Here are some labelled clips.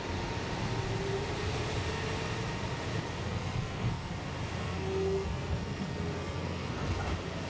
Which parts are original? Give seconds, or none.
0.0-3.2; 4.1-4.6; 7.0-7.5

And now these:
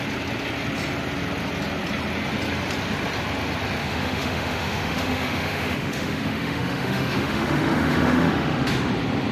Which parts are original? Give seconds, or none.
0.0-3.8; 8.9-9.3